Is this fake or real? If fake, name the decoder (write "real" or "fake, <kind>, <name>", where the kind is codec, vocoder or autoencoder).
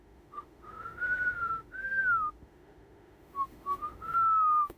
fake, autoencoder, DAC-VAE